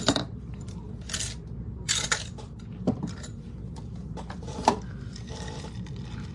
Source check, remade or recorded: remade